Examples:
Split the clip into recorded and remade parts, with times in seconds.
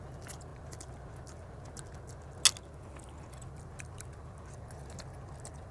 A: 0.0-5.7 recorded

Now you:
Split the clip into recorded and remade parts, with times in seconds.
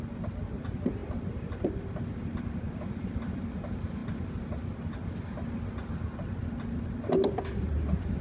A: 0.0-1.0 recorded; 1.0-3.4 remade; 3.4-8.2 recorded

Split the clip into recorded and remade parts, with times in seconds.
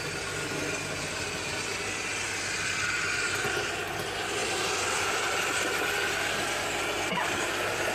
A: 0.0-7.9 recorded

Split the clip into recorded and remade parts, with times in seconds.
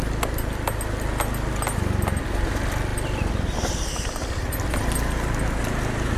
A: 0.0-2.9 recorded; 2.9-4.8 remade; 4.8-6.2 recorded